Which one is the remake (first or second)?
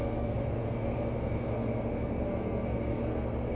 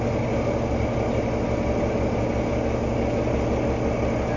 first